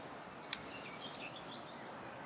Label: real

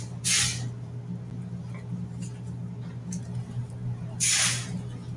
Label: real